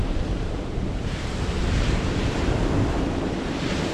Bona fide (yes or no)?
no